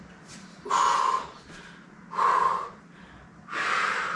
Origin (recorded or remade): recorded